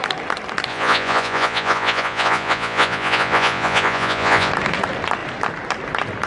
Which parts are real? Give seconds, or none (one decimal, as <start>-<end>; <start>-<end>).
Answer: 0.0-0.7; 4.5-6.3